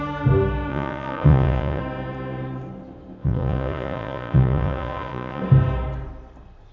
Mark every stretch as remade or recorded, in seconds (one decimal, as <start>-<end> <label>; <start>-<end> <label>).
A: 0.0-0.7 recorded; 0.7-1.8 remade; 1.8-3.2 recorded; 3.2-5.4 remade; 5.4-6.7 recorded

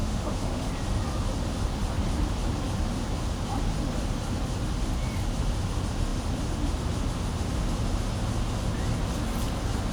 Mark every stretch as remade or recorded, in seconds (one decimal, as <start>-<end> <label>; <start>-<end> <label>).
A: 0.0-0.7 remade; 0.7-9.9 recorded

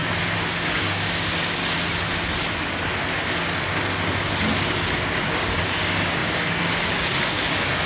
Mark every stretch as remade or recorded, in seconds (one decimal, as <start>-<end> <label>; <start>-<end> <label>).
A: 0.0-0.6 recorded; 0.6-1.6 remade; 1.6-5.0 recorded; 5.0-7.9 remade

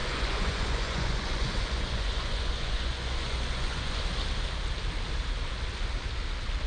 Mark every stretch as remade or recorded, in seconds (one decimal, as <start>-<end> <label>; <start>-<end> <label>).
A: 0.0-4.0 remade; 4.0-6.7 recorded

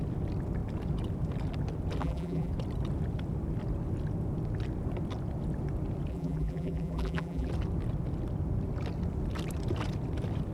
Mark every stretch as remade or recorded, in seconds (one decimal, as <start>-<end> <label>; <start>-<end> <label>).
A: 0.0-2.0 recorded; 2.0-2.5 remade; 2.5-6.1 recorded; 6.1-7.5 remade; 7.5-10.5 recorded

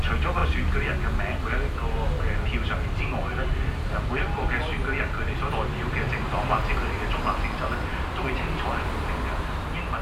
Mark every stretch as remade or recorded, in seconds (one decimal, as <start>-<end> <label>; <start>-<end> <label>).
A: 0.0-10.0 recorded